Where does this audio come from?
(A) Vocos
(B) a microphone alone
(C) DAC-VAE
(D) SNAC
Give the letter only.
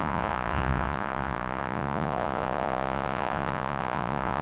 A